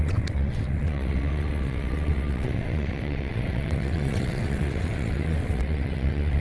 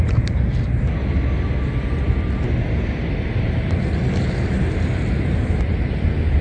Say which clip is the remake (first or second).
first